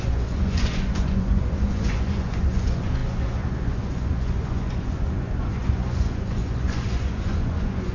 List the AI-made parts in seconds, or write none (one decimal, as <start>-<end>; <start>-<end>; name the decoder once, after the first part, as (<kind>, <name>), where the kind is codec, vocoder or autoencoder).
0.0-7.9 (vocoder, Vocos)